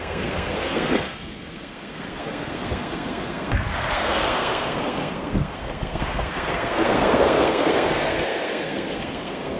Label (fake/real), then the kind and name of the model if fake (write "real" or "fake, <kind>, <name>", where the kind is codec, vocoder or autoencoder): fake, codec, SNAC